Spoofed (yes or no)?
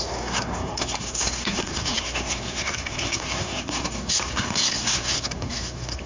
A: yes